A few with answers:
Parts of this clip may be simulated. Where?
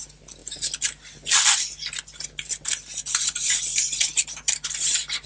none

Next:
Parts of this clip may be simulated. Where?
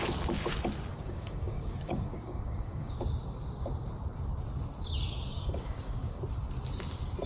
0.9-3.0 (codec, DAC); 5.3-6.2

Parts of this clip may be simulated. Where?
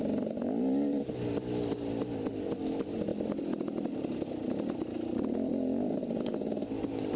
none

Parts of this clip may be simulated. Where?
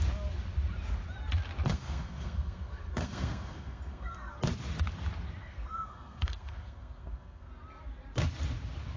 1.7-4.4 (codec, SNAC); 5.4-7.5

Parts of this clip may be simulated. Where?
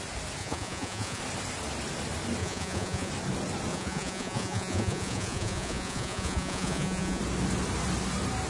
0.4-1.2 (vocoder, Vocos); 2.4-3.1; 3.7-7.2